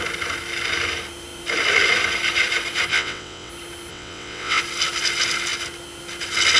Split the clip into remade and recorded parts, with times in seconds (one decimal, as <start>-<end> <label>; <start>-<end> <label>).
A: 0.0-2.9 recorded; 2.9-3.5 remade; 3.5-3.9 recorded; 3.9-4.6 remade; 4.6-6.6 recorded